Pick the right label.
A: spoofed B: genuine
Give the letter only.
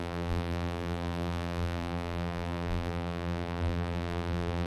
A